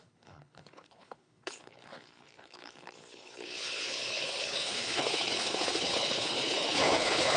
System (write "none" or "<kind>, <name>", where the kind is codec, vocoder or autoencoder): codec, HILCodec